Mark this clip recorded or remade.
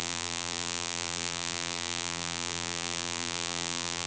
remade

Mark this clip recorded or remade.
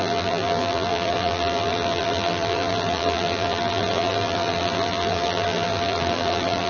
remade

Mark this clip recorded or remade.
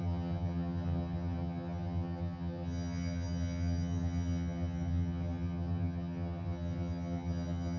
remade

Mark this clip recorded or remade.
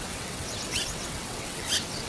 remade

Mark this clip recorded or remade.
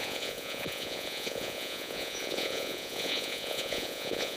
remade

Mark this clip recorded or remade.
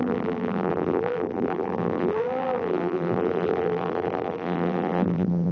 remade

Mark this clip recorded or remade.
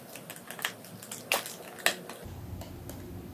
recorded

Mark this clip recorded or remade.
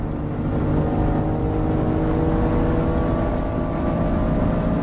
recorded